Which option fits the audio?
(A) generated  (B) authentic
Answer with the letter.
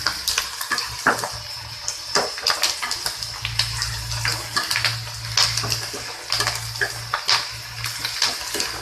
B